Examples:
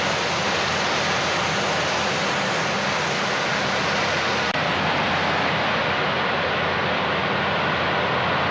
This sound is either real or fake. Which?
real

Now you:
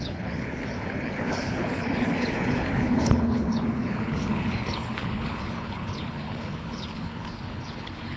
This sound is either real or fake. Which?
fake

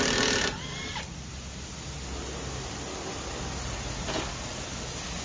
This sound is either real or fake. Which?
real